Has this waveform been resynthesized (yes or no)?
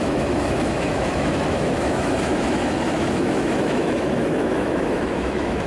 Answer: yes